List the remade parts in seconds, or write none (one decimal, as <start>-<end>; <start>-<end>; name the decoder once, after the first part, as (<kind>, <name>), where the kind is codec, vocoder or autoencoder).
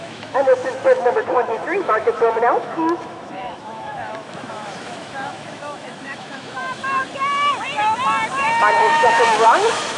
0.0-6.8 (autoencoder, DAC-VAE); 8.8-10.0